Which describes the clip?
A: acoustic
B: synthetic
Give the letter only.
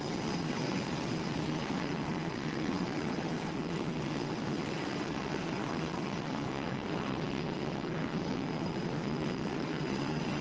B